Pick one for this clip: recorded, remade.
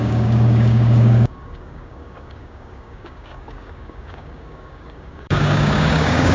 remade